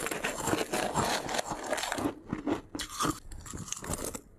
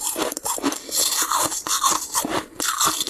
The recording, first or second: first